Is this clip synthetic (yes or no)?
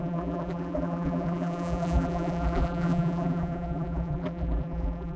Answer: yes